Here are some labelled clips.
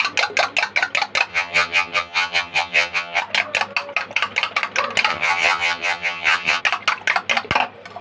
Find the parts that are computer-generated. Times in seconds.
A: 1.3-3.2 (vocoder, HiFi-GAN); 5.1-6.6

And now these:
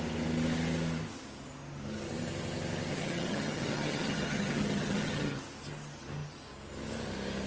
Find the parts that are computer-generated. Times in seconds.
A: 2.9-5.4 (vocoder, HiFi-GAN)

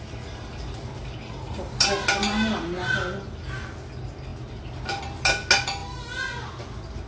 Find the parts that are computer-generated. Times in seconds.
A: none

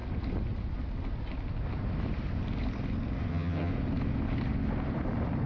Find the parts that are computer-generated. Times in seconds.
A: 3.3-3.7 (vocoder, HiFi-GAN)

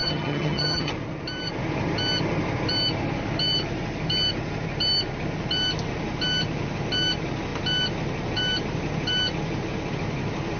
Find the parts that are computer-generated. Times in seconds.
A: 0.0-0.9 (vocoder, HiFi-GAN)

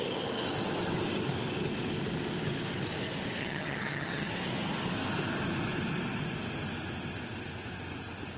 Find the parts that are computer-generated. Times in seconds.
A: 3.4-4.3 (vocoder, HiFi-GAN)